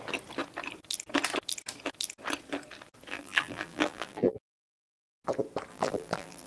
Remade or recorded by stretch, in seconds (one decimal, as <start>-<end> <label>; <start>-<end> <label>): 0.0-3.1 recorded; 3.1-4.4 remade; 4.4-5.7 recorded; 5.7-6.5 remade